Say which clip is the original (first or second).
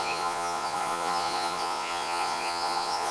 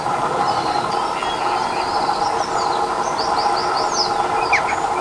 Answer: second